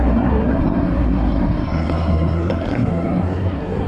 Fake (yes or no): yes